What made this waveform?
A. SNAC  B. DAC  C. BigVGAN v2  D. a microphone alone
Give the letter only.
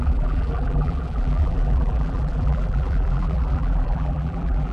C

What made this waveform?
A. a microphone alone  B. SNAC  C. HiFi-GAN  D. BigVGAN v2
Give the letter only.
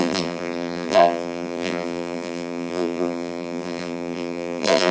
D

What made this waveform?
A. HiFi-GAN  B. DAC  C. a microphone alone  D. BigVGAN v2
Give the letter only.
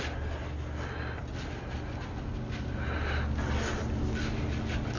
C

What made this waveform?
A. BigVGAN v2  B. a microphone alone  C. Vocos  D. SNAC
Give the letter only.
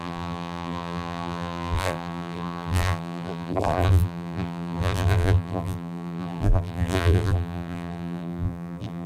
A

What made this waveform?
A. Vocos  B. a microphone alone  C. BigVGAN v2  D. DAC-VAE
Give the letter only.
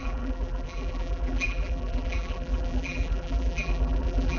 C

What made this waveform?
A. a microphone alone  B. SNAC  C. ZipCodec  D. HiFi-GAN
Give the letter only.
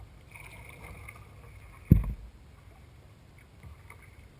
A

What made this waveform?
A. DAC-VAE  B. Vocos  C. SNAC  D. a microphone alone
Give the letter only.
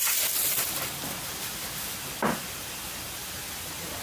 D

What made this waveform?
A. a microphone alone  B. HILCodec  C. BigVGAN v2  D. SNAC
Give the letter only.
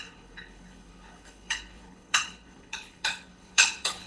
B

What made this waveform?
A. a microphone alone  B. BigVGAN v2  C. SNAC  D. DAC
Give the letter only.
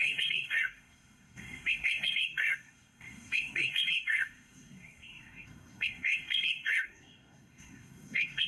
C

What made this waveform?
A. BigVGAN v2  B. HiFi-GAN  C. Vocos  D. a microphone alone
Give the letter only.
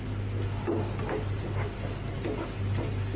D